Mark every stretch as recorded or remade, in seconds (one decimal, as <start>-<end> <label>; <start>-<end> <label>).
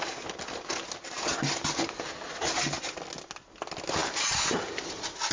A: 0.0-5.3 recorded